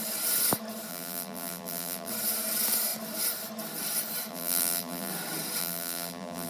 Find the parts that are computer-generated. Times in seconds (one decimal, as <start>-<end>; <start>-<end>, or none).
0.9-2.1; 4.3-5.1; 5.6-6.5